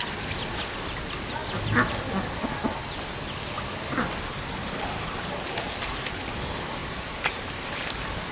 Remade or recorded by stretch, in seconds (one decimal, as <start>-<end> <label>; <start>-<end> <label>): 0.0-6.8 recorded; 6.8-7.6 remade; 7.6-8.3 recorded